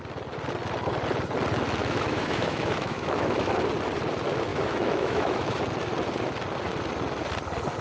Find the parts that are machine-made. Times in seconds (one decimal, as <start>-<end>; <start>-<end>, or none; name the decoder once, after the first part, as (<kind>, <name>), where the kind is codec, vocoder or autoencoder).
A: 1.8-3.5 (autoencoder, DAC-VAE); 4.5-5.6